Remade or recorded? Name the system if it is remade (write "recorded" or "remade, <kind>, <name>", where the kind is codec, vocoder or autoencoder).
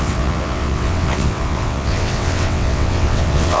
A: remade, vocoder, WaveNeXt